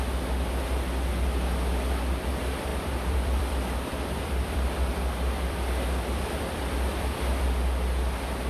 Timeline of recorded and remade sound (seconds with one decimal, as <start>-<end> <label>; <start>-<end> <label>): 0.0-2.7 recorded; 2.7-7.4 remade; 7.4-8.5 recorded